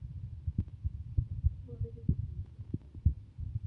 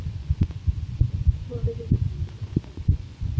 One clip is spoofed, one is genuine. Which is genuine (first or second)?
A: first